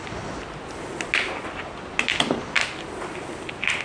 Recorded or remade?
recorded